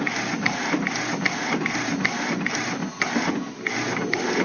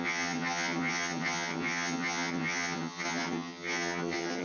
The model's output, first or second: second